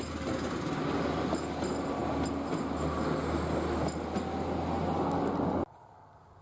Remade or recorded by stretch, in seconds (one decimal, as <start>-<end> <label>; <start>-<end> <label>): 0.0-6.4 recorded